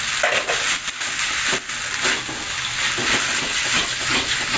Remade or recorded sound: recorded